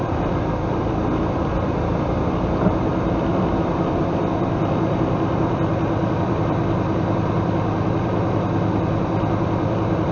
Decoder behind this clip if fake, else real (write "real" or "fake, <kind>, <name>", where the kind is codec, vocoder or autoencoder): fake, vocoder, BigVGAN v2